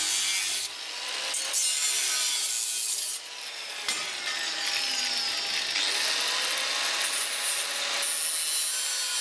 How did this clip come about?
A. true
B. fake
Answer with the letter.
A